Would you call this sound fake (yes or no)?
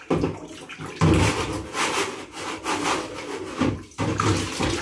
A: no